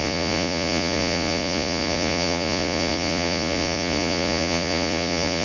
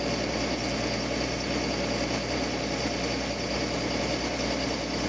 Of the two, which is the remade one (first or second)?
first